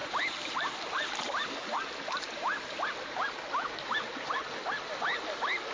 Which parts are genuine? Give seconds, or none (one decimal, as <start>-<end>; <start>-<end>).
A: 0.0-5.7